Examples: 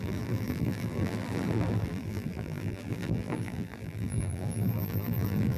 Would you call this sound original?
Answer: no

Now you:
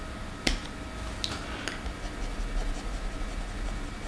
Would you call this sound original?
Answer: yes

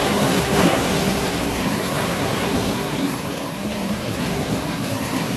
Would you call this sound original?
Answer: no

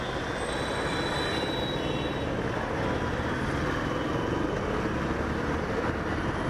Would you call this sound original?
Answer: yes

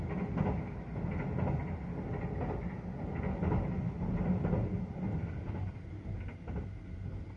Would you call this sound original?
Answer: yes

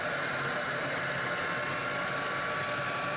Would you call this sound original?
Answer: yes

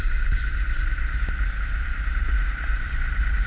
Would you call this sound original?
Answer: yes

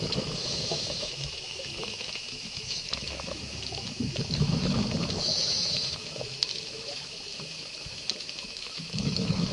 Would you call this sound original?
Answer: no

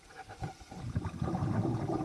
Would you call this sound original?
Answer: yes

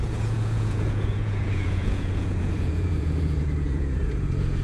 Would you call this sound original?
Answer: no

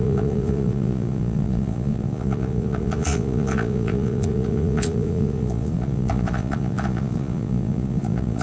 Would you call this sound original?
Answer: no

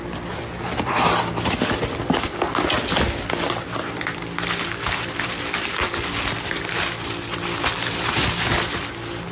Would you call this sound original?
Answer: yes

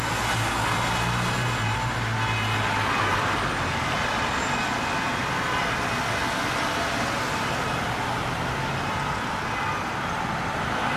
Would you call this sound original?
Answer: yes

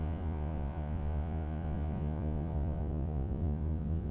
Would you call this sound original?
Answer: no